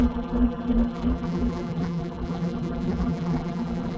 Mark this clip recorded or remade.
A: remade